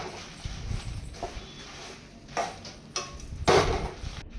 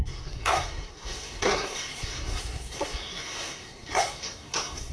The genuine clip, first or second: first